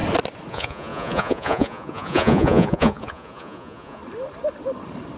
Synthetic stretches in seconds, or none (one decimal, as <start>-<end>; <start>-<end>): 0.5-4.0